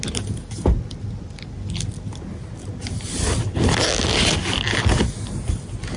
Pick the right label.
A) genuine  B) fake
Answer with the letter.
A